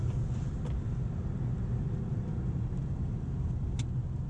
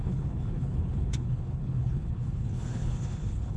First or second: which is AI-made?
second